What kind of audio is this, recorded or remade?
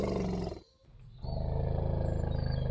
recorded